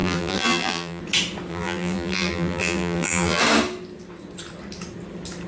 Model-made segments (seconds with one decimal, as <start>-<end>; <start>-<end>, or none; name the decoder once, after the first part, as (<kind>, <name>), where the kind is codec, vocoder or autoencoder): 0.0-1.0 (vocoder, BigVGAN v2); 1.5-3.4